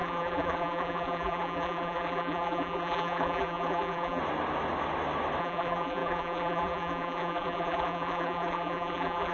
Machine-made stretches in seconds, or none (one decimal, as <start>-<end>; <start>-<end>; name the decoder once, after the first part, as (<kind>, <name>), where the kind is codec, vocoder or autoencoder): 0.0-4.2 (vocoder, BigVGAN v2); 5.4-9.3